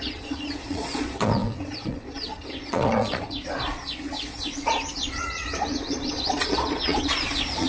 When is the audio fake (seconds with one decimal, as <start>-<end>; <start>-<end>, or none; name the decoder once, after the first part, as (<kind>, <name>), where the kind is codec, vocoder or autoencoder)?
0.0-7.7 (vocoder, Vocos)